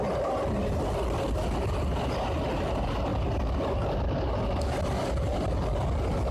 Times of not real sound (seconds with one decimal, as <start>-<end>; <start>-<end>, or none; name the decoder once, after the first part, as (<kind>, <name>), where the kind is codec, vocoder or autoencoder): none